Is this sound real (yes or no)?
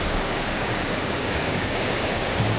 no